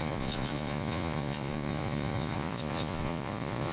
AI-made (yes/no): yes